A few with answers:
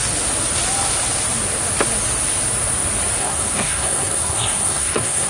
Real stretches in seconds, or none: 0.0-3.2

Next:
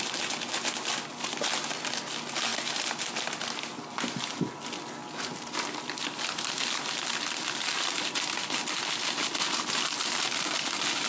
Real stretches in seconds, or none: 0.0-11.1

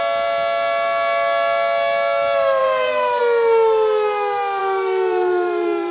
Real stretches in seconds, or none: 0.0-2.6; 3.2-4.6

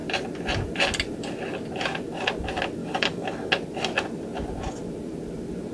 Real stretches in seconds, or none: 0.0-2.8; 3.5-5.7

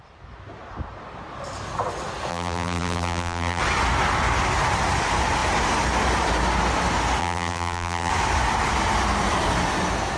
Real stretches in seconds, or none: 0.0-2.3; 3.6-7.2; 8.1-10.2

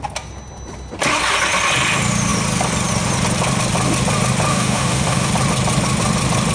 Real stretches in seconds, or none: 0.0-4.5; 5.3-6.5

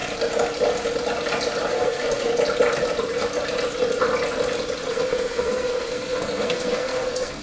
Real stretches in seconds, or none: 0.0-1.7; 2.3-4.9